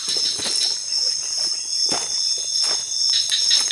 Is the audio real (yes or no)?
yes